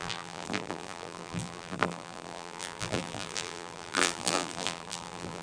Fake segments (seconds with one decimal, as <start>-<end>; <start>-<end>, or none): 0.0-5.4